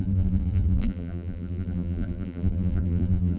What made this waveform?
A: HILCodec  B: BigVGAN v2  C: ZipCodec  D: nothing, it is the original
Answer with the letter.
B